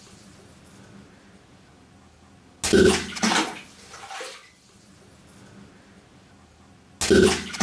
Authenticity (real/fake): real